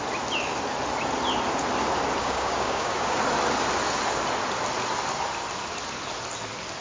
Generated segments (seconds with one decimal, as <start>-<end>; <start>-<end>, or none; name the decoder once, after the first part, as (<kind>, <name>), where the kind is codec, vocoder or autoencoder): 2.2-3.2 (codec, DAC)